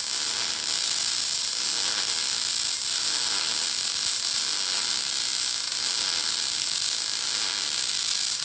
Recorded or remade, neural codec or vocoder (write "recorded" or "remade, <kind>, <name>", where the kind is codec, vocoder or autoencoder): recorded